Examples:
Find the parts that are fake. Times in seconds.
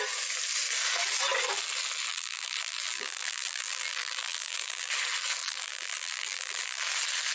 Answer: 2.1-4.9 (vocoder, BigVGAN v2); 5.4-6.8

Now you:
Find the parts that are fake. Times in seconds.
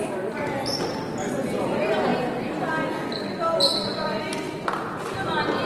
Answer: none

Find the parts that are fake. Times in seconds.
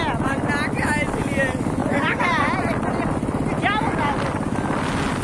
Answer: 1.8-2.4 (vocoder, Vocos)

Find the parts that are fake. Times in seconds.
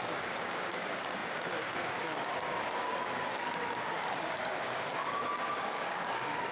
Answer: 0.0-6.5 (codec, DAC)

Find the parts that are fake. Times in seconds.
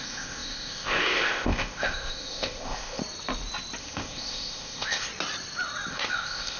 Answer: 0.0-3.0 (codec, ZipCodec); 3.8-5.1; 5.9-6.6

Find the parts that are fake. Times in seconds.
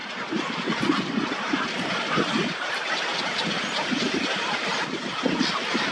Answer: none